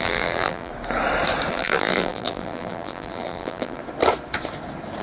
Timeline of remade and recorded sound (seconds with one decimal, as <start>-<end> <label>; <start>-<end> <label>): 0.0-0.7 remade; 0.7-1.5 recorded; 1.5-3.8 remade; 3.8-5.0 recorded